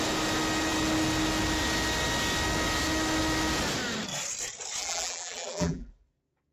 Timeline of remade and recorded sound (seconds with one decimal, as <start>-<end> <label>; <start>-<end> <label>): 0.0-4.8 recorded; 4.8-5.9 remade; 5.9-6.5 recorded